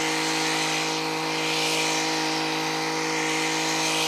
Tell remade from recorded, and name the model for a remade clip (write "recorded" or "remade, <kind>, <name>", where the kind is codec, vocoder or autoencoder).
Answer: recorded